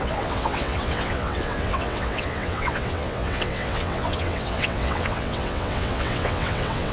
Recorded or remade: remade